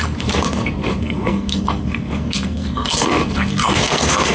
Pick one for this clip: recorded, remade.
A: remade